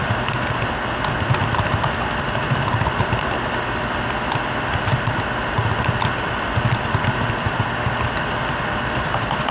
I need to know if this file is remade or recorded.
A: remade